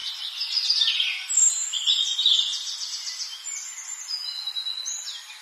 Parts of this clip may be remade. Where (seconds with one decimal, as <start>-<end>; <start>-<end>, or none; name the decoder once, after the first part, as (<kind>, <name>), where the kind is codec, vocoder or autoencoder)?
none

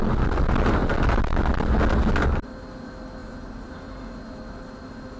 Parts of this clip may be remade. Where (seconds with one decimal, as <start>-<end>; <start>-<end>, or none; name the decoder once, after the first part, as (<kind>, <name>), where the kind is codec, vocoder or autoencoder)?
3.2-4.1 (vocoder, BigVGAN v2)

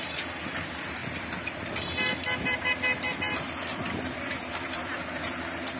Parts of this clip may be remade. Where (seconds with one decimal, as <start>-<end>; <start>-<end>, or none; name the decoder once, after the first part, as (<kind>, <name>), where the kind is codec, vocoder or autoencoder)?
0.0-5.8 (vocoder, BigVGAN v2)

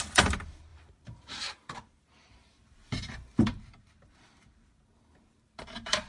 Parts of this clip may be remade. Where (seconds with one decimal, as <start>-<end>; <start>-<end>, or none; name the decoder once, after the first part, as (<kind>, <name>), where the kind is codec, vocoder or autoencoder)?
0.0-6.1 (vocoder, BigVGAN v2)